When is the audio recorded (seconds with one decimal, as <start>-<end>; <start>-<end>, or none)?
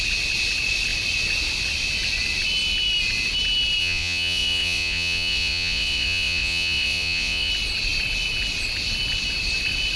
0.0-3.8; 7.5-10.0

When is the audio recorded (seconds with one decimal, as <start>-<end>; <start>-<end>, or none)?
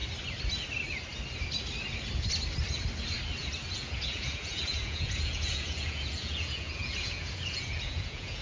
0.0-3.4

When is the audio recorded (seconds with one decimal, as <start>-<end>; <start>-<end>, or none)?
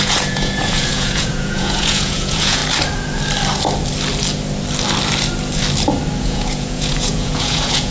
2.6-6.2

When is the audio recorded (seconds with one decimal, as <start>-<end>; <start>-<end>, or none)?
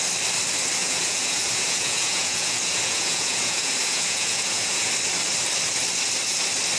0.0-0.8; 4.9-6.8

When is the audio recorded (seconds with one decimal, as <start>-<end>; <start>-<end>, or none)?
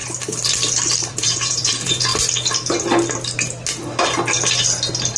0.0-1.1; 2.1-5.2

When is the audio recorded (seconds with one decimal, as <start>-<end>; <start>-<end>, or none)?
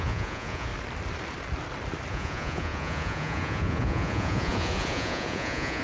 0.7-2.1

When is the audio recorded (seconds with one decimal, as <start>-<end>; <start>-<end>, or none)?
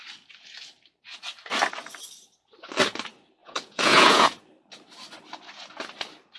0.0-3.4; 4.4-6.4